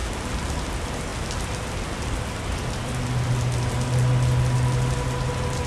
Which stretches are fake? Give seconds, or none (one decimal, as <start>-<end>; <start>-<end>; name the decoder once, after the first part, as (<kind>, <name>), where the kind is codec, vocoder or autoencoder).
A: none